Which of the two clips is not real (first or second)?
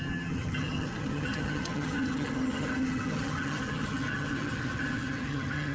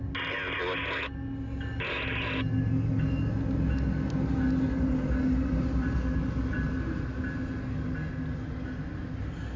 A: first